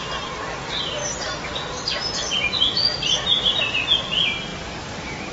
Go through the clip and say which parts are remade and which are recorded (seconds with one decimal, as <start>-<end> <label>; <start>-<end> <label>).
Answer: 0.0-5.3 recorded